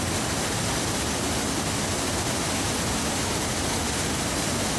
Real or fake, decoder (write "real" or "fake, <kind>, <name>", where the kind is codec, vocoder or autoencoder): real